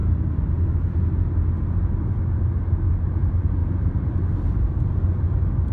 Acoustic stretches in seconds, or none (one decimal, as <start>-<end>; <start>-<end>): 0.0-5.7